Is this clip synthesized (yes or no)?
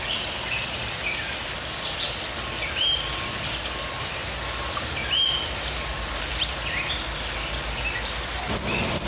no